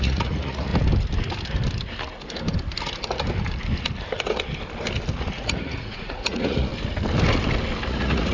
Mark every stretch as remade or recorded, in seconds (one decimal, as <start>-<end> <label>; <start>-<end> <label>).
0.0-0.7 remade; 0.7-5.2 recorded; 5.2-6.7 remade; 6.7-7.9 recorded; 7.9-8.3 remade